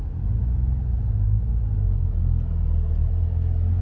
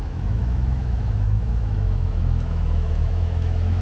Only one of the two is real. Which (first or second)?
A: first